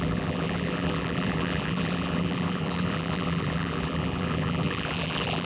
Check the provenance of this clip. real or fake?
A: fake